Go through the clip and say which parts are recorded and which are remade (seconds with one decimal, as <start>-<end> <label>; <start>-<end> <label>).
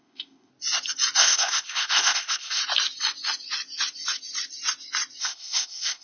0.0-0.5 remade; 0.5-1.2 recorded; 1.2-2.6 remade; 2.6-5.2 recorded; 5.2-6.0 remade